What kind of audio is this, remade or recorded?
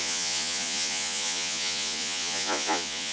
remade